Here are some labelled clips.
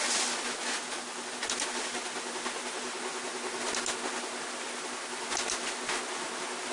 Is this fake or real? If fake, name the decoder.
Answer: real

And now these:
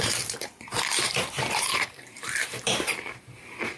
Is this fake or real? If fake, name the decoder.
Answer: fake, vocoder, BigVGAN v2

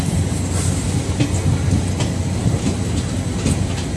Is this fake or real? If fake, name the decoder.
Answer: real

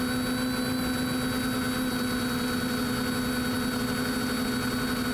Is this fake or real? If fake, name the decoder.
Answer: real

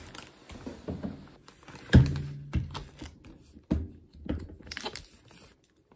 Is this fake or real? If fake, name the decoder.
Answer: real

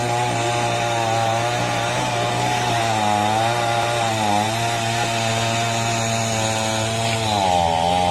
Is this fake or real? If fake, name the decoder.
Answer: real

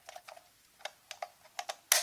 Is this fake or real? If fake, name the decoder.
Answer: real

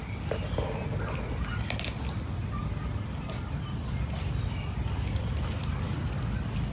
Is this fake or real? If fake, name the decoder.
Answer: real